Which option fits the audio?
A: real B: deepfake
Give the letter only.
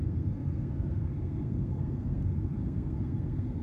B